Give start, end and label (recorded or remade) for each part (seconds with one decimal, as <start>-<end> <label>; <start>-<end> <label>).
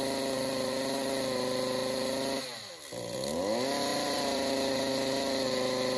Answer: 0.0-3.9 recorded; 3.9-4.9 remade; 4.9-6.0 recorded